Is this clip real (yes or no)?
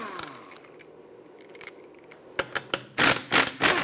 yes